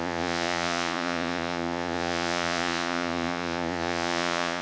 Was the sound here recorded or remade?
remade